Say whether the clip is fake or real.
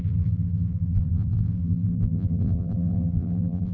fake